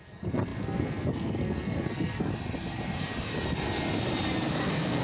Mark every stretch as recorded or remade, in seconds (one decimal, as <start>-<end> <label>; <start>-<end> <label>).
0.0-2.3 remade; 2.3-4.5 recorded; 4.5-5.0 remade